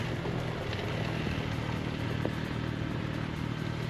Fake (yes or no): no